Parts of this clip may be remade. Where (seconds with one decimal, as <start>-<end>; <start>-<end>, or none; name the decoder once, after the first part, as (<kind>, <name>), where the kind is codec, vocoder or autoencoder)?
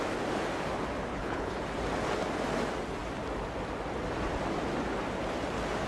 1.1-1.6 (codec, HILCodec)